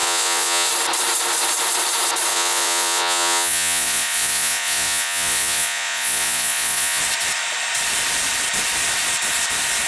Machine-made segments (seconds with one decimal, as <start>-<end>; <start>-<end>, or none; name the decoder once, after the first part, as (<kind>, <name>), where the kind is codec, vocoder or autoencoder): 0.0-0.7 (vocoder, Vocos); 2.3-7.0